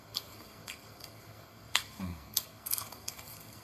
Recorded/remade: remade